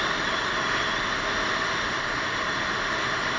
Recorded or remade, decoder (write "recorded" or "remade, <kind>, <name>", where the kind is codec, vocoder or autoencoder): recorded